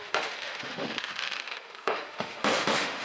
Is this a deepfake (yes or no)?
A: yes